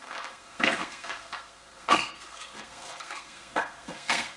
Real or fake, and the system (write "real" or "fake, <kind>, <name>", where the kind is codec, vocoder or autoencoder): fake, codec, SNAC